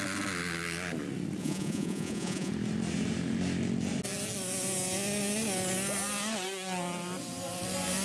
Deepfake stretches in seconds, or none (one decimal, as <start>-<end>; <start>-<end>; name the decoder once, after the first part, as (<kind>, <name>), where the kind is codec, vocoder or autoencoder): 1.4-2.5 (vocoder, Vocos)